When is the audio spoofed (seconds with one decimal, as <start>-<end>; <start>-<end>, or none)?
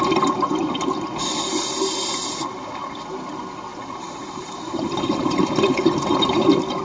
3.7-6.8